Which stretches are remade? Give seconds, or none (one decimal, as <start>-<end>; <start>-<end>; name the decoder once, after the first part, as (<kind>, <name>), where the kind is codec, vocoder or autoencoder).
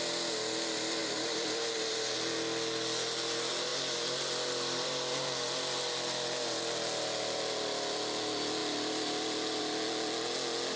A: 1.0-2.1 (vocoder, BigVGAN v2); 8.6-9.6